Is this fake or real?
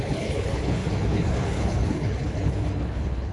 fake